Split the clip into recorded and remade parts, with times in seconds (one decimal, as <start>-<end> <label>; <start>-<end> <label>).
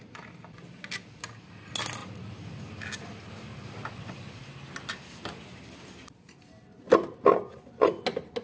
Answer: 0.0-8.4 recorded